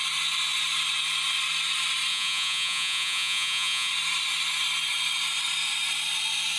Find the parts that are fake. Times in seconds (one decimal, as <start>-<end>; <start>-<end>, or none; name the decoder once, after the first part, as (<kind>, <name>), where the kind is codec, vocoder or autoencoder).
2.1-3.9 (vocoder, Vocos)